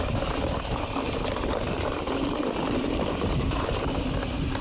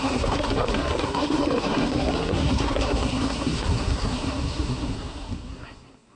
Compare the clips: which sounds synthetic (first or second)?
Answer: second